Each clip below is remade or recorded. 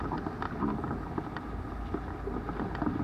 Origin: recorded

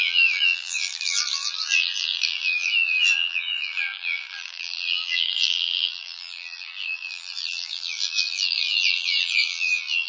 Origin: remade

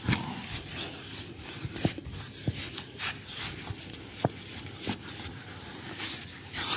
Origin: recorded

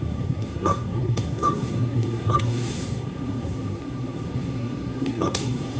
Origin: remade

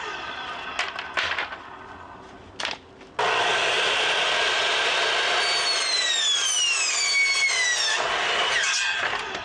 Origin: recorded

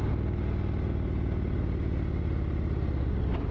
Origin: recorded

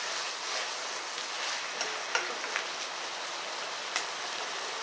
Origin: recorded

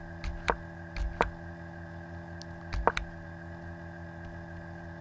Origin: recorded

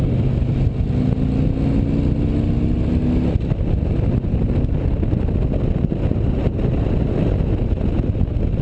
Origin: recorded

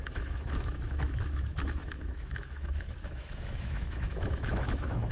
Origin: remade